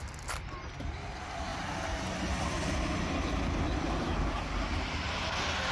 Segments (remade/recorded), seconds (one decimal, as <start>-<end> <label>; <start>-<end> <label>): 0.0-5.7 recorded